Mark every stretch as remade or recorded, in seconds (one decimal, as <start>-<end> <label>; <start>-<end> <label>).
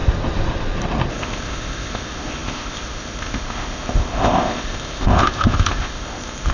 0.0-1.1 recorded; 1.1-6.5 remade